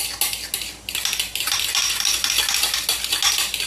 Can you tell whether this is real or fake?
real